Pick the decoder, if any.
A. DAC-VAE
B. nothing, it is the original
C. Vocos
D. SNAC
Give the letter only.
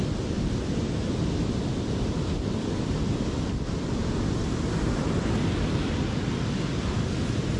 B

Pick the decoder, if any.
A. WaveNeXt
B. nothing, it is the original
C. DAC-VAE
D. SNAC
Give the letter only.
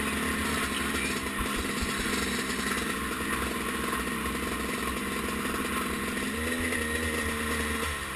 B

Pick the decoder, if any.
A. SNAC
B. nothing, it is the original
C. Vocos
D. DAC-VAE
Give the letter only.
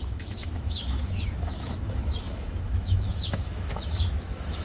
D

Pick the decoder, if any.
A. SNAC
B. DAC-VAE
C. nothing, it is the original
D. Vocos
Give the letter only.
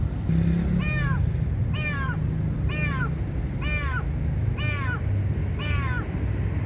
C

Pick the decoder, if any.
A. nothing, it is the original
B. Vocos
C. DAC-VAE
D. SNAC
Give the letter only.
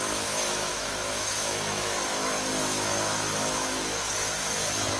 C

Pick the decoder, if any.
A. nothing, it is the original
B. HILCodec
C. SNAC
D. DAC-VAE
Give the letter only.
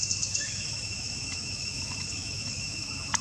D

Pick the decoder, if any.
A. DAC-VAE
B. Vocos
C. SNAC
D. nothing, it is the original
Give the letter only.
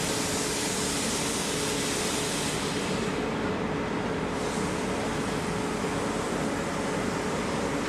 D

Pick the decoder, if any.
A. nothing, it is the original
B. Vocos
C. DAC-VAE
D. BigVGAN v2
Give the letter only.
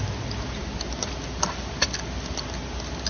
A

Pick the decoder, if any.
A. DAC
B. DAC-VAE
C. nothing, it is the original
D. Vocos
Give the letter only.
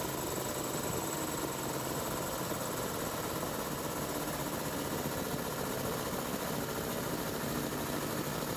C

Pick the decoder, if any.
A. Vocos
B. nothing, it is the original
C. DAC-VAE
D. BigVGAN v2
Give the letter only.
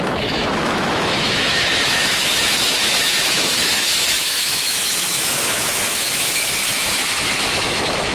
C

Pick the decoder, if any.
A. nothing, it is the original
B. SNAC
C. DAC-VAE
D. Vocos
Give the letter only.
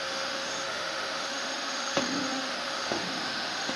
C